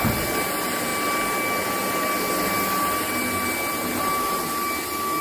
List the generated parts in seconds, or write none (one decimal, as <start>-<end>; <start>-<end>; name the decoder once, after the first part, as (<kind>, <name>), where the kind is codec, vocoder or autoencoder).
none

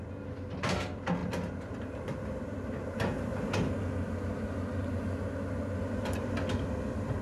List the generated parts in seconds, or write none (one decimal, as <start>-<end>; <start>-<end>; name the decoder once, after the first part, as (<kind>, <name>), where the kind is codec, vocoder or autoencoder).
none